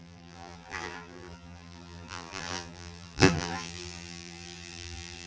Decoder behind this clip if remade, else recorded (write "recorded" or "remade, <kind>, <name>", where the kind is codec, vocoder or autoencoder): remade, vocoder, BigVGAN v2